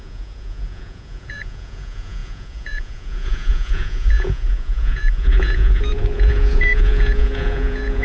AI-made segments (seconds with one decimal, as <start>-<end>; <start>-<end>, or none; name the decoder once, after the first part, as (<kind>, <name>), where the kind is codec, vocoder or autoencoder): 0.0-8.0 (vocoder, Vocos)